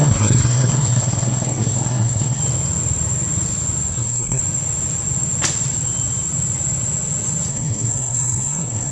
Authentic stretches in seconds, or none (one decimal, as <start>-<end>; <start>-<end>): 2.4-3.9; 4.4-7.5